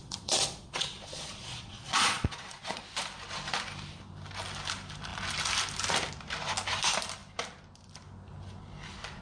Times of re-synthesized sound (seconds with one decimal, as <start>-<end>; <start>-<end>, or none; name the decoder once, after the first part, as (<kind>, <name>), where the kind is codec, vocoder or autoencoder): 0.0-2.8 (vocoder, Vocos)